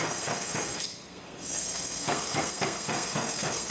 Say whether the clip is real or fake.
fake